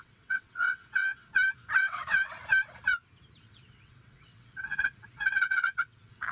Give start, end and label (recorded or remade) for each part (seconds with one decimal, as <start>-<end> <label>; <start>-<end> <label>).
0.0-1.3 remade; 1.3-1.8 recorded; 1.8-2.4 remade; 2.4-3.4 recorded; 3.4-6.3 remade